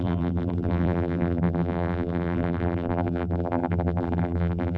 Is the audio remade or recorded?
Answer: remade